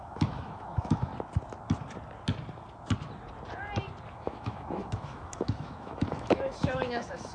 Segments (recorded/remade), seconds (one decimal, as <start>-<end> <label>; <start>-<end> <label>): 0.0-1.1 remade; 1.1-4.1 recorded; 4.1-7.3 remade

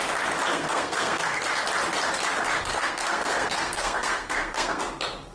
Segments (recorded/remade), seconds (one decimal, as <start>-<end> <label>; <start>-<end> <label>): 0.0-0.5 recorded; 0.5-1.4 remade; 1.4-2.7 recorded; 2.7-4.8 remade; 4.8-5.3 recorded

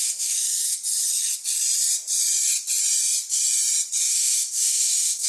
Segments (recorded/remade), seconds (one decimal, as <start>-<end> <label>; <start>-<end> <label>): 0.0-0.8 remade; 0.8-4.0 recorded; 4.0-5.3 remade

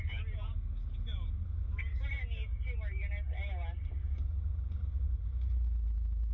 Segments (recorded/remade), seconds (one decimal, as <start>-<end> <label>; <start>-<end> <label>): 0.0-6.3 recorded